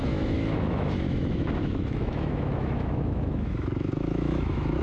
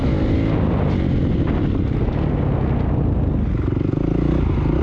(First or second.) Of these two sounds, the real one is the second